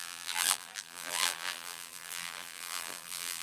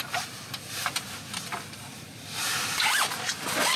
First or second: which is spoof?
first